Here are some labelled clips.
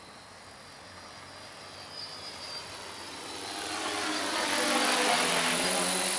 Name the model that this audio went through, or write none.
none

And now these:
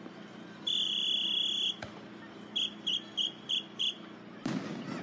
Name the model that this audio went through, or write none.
none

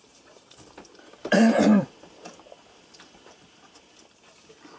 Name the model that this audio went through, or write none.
vocoder, BigVGAN v2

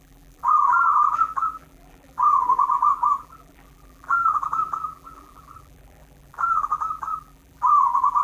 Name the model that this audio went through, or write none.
vocoder, BigVGAN v2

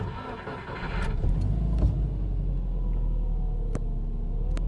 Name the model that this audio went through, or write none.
none